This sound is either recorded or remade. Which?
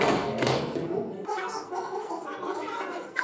remade